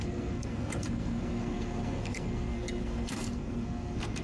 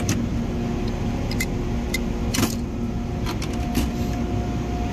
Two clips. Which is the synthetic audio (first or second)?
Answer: first